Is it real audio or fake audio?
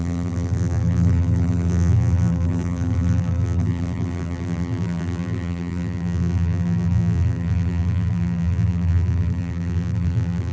fake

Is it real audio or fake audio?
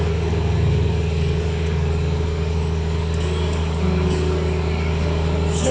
fake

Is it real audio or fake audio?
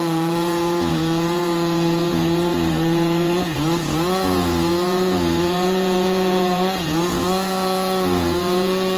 fake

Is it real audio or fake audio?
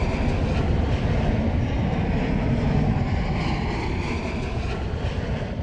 real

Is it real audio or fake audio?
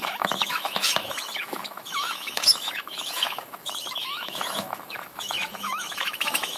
fake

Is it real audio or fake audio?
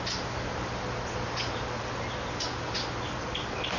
real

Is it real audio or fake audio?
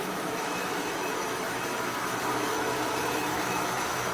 fake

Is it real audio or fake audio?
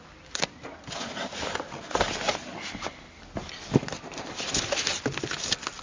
real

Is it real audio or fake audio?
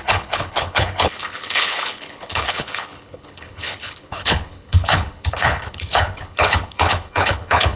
fake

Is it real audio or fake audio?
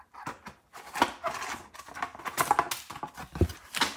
real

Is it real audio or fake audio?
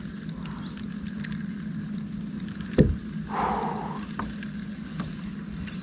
real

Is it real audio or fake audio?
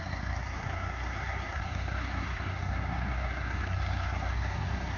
fake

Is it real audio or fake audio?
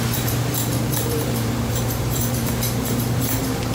fake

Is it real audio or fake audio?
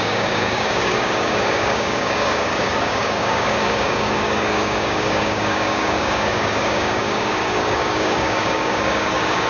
fake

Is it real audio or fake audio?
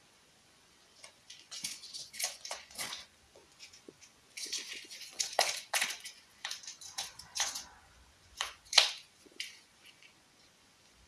fake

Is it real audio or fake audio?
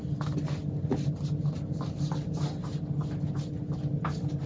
real